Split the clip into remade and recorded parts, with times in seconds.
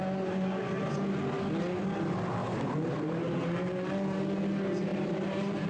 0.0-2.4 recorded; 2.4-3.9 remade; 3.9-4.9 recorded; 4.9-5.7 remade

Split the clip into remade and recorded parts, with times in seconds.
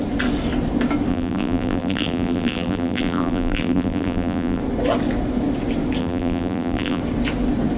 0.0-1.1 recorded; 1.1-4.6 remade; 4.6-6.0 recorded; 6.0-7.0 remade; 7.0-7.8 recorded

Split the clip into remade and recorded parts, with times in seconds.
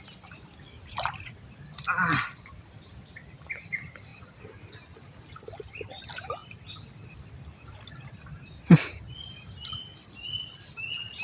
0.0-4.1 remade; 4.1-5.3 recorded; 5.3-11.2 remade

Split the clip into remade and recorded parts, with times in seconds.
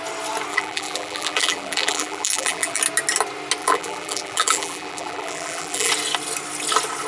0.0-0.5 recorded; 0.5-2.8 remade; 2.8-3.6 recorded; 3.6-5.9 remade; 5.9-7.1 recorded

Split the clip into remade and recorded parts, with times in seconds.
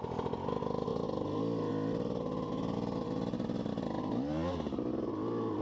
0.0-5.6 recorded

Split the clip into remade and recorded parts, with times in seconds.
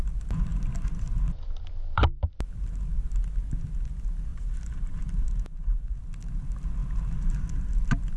0.0-4.3 recorded; 4.3-6.0 remade; 6.0-8.2 recorded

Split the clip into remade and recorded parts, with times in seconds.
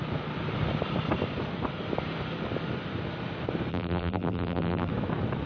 0.0-3.7 recorded; 3.7-4.9 remade; 4.9-5.5 recorded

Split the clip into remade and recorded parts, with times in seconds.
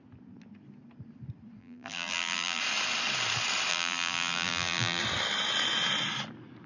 0.0-1.6 recorded; 1.6-2.6 remade; 2.6-3.7 recorded; 3.7-5.0 remade; 5.0-6.7 recorded